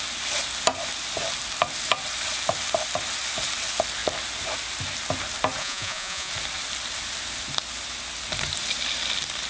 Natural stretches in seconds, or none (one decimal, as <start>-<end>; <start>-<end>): 0.0-5.6; 6.3-9.5